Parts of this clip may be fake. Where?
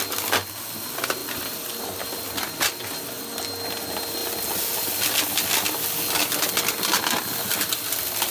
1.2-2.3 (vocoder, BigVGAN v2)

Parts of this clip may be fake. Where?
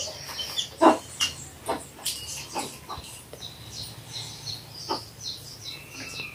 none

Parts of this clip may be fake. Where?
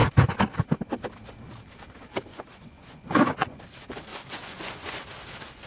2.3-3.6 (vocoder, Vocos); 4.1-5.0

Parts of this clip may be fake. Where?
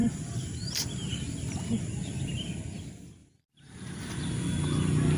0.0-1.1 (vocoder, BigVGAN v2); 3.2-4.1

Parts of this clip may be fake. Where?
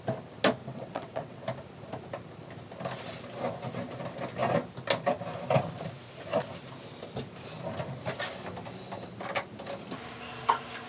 0.6-1.4 (vocoder, WaveNeXt)